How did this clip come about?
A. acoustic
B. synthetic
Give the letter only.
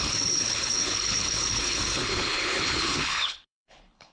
B